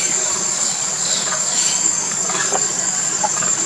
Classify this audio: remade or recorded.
remade